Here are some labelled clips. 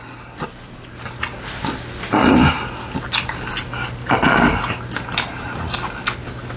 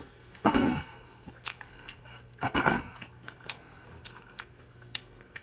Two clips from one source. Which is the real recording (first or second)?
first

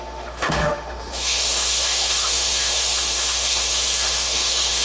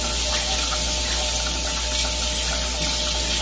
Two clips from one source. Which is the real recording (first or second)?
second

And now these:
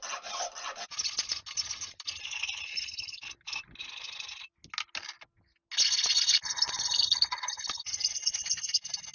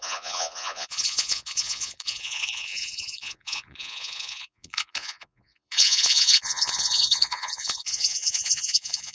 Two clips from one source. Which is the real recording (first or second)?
first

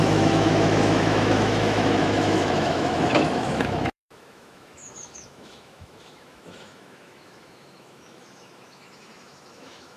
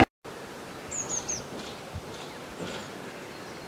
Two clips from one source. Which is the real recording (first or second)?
second